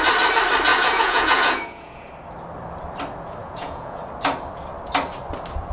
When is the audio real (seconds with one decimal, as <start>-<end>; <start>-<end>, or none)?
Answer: 0.0-0.7; 2.1-3.4; 4.0-5.7